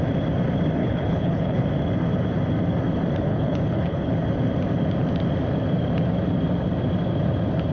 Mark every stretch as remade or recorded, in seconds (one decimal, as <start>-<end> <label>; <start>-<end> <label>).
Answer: 0.0-0.8 recorded; 0.8-1.6 remade; 1.6-3.3 recorded; 3.3-4.1 remade; 4.1-7.7 recorded